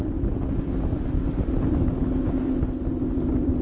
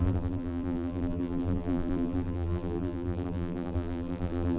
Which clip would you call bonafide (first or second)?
first